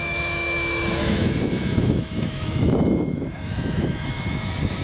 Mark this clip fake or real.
fake